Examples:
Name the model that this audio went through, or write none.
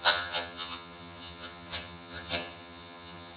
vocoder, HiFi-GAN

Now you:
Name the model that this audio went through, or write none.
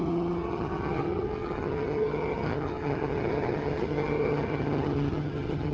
vocoder, HiFi-GAN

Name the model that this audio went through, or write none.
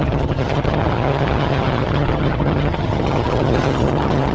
vocoder, HiFi-GAN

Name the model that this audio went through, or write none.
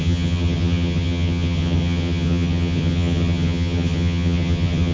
vocoder, HiFi-GAN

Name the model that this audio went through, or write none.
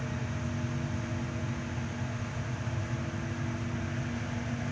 none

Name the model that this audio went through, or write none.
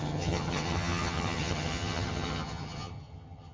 vocoder, HiFi-GAN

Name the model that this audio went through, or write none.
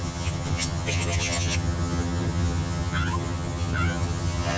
vocoder, HiFi-GAN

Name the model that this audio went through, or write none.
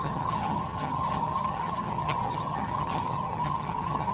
vocoder, HiFi-GAN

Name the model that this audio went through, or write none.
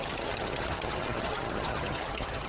vocoder, HiFi-GAN